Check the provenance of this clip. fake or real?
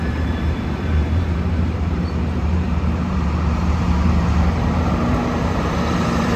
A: fake